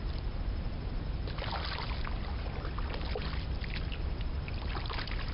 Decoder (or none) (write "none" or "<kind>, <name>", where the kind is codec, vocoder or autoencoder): none